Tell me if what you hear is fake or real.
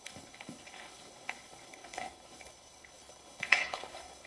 fake